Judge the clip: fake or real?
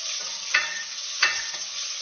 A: fake